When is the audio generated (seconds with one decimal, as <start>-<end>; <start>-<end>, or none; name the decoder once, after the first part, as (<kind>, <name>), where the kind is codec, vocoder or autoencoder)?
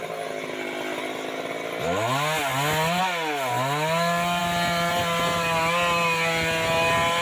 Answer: none